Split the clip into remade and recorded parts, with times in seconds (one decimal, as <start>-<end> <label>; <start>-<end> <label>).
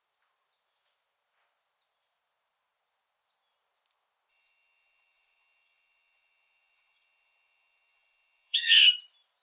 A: 0.0-4.3 recorded; 4.3-8.8 remade; 8.8-9.4 recorded